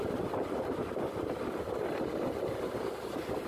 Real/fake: real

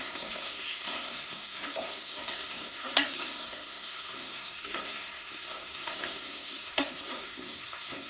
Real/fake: fake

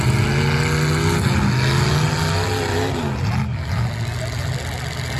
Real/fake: real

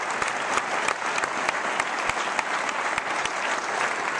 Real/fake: real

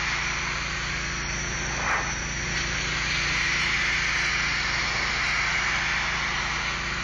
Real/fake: real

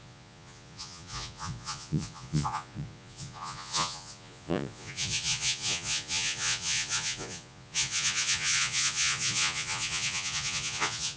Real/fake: fake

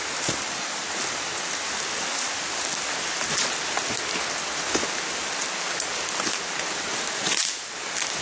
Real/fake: real